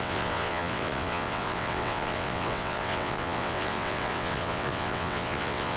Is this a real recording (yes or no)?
no